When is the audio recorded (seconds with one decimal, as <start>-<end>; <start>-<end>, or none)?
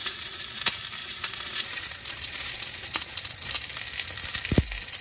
0.6-1.0; 3.1-5.0